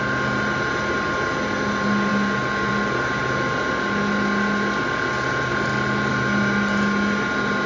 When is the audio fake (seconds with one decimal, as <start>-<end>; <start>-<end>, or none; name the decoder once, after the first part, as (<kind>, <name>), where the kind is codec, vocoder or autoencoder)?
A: none